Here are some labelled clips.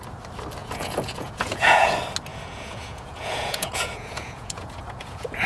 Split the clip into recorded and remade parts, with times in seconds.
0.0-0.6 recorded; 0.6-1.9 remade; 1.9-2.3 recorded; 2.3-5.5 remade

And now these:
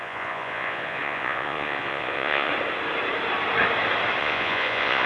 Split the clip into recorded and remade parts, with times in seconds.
0.0-2.5 remade; 2.5-4.2 recorded; 4.2-5.1 remade

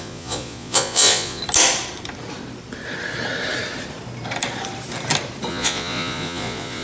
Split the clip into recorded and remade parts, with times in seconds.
0.0-1.4 remade; 1.4-5.5 recorded; 5.5-6.8 remade

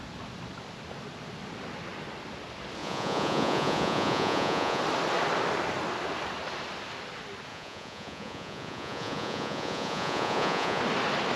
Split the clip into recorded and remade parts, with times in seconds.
0.0-2.8 recorded; 2.8-4.8 remade; 4.8-7.5 recorded; 7.5-10.8 remade; 10.8-11.4 recorded

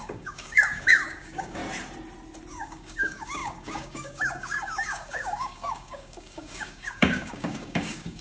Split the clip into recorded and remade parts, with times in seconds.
0.0-1.6 remade; 1.6-2.5 recorded; 2.5-8.2 remade

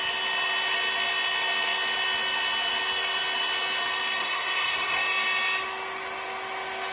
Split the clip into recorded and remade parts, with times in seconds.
0.0-4.2 recorded; 4.2-5.0 remade; 5.0-6.9 recorded